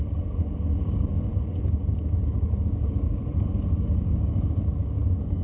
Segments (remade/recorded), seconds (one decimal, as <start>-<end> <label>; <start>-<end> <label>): 0.0-0.8 recorded; 0.8-1.3 remade; 1.3-2.2 recorded; 2.2-3.2 remade; 3.2-3.7 recorded; 3.7-5.4 remade